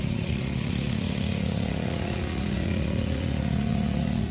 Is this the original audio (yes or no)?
no